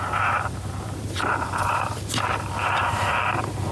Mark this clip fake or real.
fake